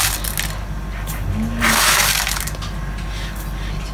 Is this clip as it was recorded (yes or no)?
yes